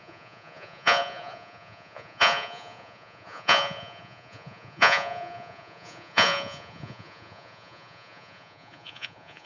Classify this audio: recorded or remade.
remade